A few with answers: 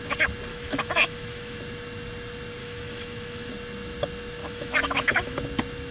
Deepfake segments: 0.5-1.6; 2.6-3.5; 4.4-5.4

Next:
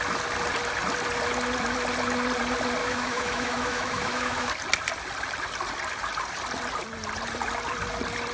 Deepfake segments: 2.8-4.5

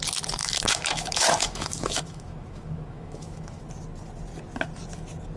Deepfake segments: 0.4-3.6

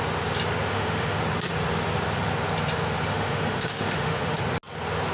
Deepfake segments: 0.7-1.2; 3.1-4.4

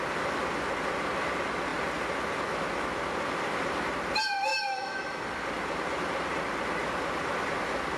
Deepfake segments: 4.5-5.2